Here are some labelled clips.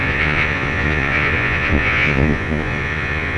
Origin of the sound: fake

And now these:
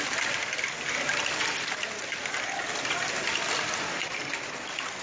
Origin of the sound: real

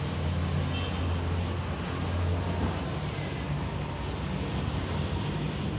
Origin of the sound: real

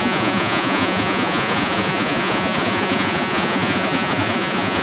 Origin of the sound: fake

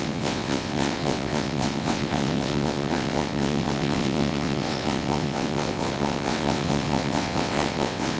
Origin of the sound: fake